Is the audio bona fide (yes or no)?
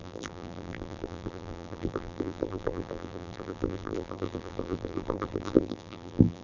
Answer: no